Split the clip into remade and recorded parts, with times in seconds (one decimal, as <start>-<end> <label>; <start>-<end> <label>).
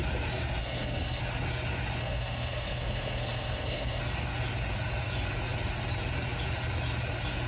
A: 0.0-0.6 recorded; 0.6-1.2 remade; 1.2-2.0 recorded; 2.0-4.0 remade; 4.0-7.5 recorded